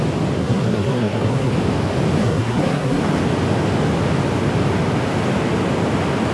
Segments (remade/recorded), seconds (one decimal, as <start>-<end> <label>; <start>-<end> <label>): 0.0-0.4 recorded; 0.4-1.5 remade; 1.5-2.2 recorded; 2.2-3.0 remade; 3.0-6.3 recorded